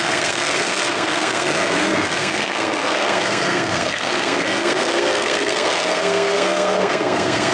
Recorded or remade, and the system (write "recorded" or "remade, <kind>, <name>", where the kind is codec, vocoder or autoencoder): remade, codec, SNAC